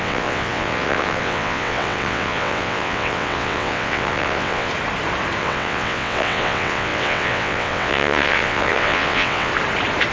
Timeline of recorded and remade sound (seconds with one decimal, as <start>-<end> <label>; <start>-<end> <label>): 0.0-4.7 remade; 4.7-5.4 recorded; 5.4-9.5 remade; 9.5-10.1 recorded

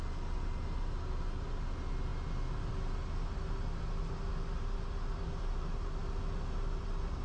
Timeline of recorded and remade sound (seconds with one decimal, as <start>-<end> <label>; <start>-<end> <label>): 0.0-7.2 recorded

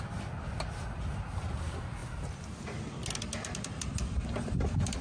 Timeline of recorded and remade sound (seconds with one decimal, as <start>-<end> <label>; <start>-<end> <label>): 0.0-5.0 recorded

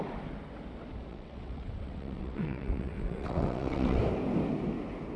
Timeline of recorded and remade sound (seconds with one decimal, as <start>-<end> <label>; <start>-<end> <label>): 0.0-1.1 recorded; 1.1-4.0 remade; 4.0-5.2 recorded

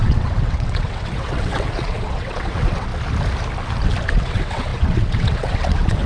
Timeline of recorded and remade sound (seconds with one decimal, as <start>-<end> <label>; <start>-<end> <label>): 0.0-2.9 remade; 2.9-4.1 recorded; 4.1-6.1 remade

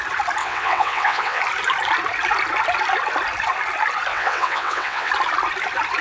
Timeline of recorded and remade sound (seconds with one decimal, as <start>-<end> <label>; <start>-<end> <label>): 0.0-0.4 recorded; 0.4-1.4 remade; 1.4-4.1 recorded; 4.1-5.1 remade; 5.1-6.0 recorded